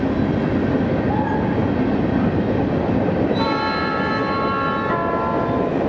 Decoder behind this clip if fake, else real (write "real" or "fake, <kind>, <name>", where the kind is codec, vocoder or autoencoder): real